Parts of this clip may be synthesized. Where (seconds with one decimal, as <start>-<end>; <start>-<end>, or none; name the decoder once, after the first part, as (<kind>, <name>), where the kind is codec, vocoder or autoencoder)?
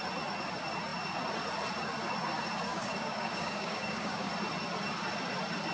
2.7-4.3 (codec, DAC)